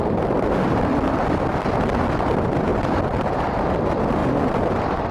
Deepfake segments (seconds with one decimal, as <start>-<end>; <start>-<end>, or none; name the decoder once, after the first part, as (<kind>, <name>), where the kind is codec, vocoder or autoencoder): 0.9-1.4 (vocoder, BigVGAN v2); 2.7-3.6; 4.2-5.1